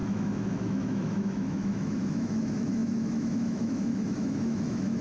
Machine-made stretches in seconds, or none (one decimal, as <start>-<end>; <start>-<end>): 0.0-5.0